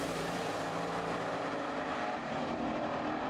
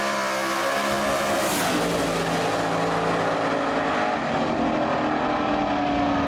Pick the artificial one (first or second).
first